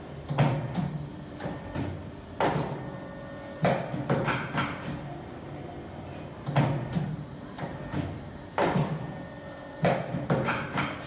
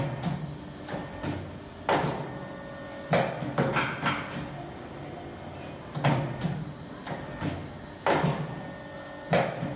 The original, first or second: second